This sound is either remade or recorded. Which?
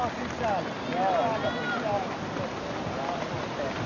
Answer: recorded